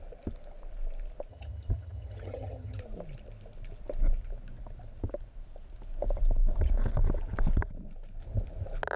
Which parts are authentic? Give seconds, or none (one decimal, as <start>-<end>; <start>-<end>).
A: 0.0-1.3; 2.8-9.0